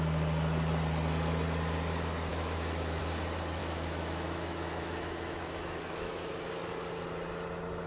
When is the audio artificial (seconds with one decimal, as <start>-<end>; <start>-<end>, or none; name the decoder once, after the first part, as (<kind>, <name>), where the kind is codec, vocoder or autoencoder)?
2.3-3.0 (autoencoder, DAC-VAE); 3.6-6.5